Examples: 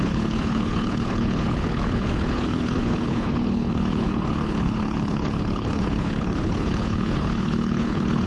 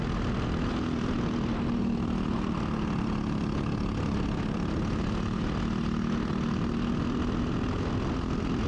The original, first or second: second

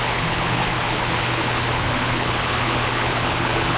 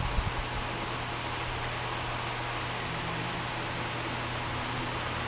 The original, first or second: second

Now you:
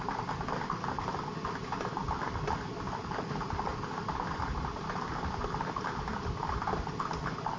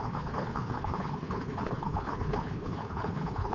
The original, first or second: first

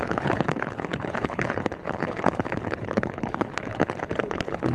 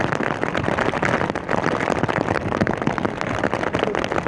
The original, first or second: second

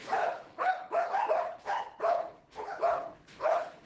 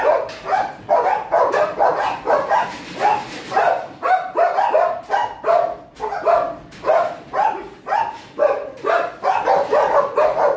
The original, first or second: second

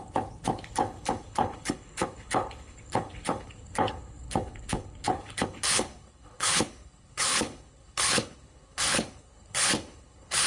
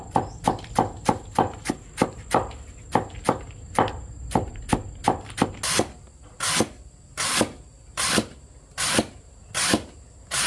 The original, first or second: second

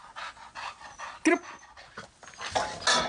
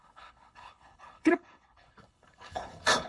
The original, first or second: first